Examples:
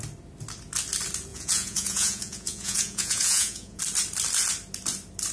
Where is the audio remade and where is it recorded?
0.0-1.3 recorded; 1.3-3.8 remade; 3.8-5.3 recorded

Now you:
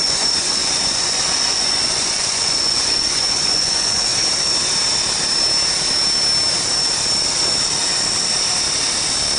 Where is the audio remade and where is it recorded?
0.0-4.1 remade; 4.1-9.4 recorded

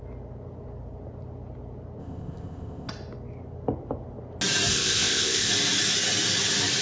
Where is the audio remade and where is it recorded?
0.0-2.0 recorded; 2.0-2.9 remade; 2.9-4.7 recorded; 4.7-5.5 remade; 5.5-6.8 recorded

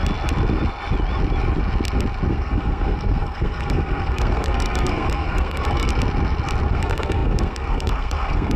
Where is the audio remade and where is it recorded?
0.0-2.3 recorded; 2.3-5.9 remade; 5.9-6.7 recorded; 6.7-8.6 remade

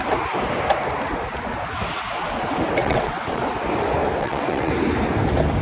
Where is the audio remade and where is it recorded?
0.0-2.8 recorded; 2.8-3.4 remade; 3.4-4.2 recorded; 4.2-4.7 remade; 4.7-5.6 recorded

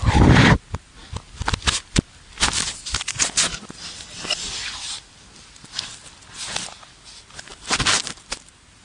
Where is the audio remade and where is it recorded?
0.0-8.8 recorded

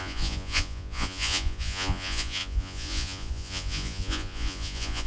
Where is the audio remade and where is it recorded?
0.0-5.1 remade

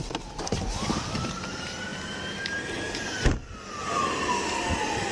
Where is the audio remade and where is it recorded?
0.0-5.1 recorded